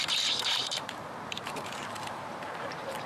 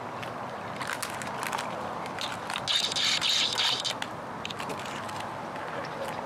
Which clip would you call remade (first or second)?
first